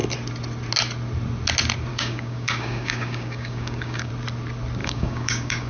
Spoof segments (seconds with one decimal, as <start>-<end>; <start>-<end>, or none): 1.9-4.1; 4.8-5.7

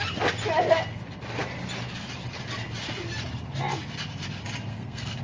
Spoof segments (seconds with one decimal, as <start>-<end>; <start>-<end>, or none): 4.7-5.2

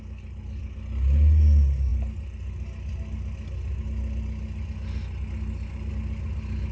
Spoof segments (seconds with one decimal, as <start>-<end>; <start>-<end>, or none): none

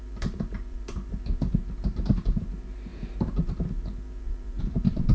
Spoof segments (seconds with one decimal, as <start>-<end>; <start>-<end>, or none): 0.0-5.1